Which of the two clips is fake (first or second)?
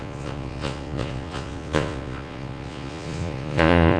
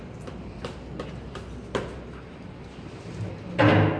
first